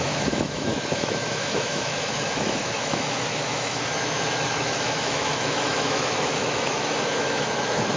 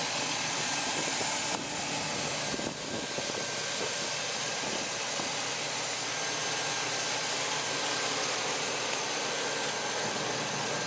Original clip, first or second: second